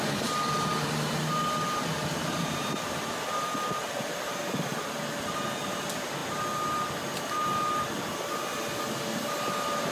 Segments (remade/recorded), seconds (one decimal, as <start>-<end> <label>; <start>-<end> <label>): 0.0-9.9 recorded